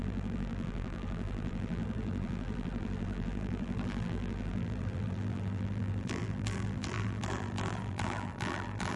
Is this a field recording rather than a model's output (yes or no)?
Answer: no